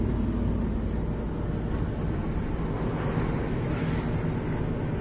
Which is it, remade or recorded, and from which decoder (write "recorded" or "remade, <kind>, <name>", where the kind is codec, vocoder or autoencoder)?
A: recorded